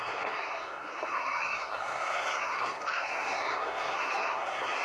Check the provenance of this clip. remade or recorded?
remade